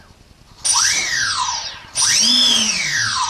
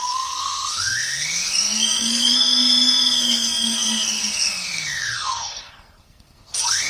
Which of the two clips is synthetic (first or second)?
second